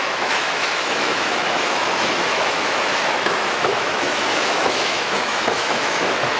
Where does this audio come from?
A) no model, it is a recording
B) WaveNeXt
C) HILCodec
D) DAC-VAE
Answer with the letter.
D